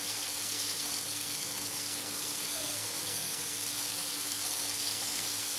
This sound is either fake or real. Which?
fake